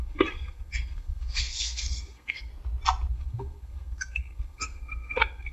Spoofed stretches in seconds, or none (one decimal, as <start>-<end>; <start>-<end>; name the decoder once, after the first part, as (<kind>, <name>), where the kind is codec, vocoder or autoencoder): 0.0-2.5 (codec, SNAC); 3.1-5.5